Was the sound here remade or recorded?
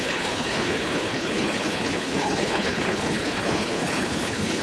remade